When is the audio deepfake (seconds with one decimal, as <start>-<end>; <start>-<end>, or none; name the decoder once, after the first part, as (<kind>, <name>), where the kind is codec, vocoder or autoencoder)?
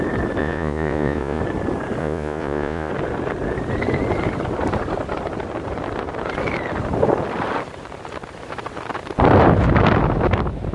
0.4-1.4 (vocoder, Vocos); 2.0-2.9